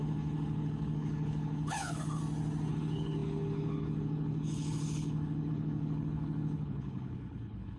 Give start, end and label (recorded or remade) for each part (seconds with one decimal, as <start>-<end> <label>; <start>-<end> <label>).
0.0-2.2 remade; 2.2-2.7 recorded; 2.7-7.8 remade